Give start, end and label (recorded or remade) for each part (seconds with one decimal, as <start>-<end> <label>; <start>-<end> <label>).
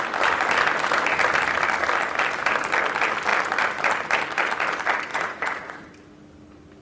0.0-5.1 recorded; 5.1-5.9 remade; 5.9-6.8 recorded